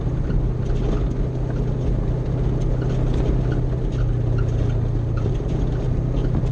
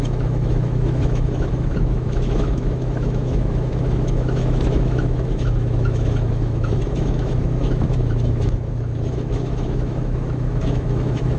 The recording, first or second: first